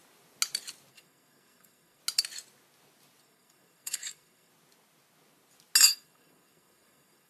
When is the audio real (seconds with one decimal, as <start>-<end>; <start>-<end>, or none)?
0.0-0.9; 2.0-3.2; 4.5-5.9